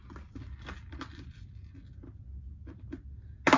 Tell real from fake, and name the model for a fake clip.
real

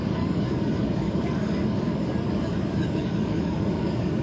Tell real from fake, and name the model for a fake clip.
fake, codec, DAC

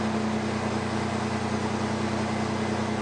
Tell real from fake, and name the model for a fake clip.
real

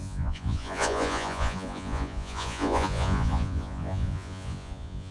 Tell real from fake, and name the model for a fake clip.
fake, vocoder, Vocos